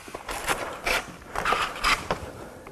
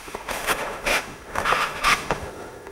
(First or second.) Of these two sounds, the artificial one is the second